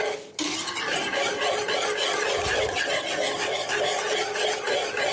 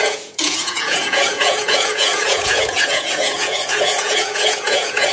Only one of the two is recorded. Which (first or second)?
first